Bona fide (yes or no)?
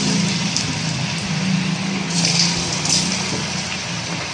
yes